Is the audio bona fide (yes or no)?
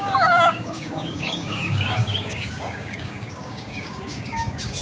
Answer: no